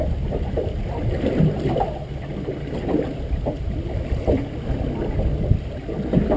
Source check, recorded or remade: recorded